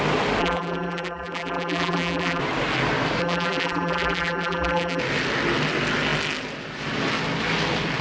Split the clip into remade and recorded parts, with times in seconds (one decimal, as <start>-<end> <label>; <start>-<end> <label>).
0.0-0.4 recorded; 0.4-2.4 remade; 2.4-3.2 recorded; 3.2-5.0 remade; 5.0-8.0 recorded